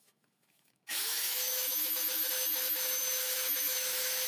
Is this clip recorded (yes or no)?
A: no